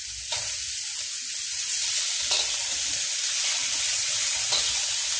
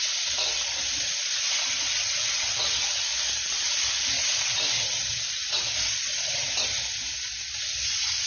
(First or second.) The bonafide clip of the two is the first